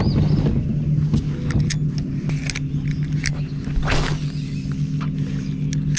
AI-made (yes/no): no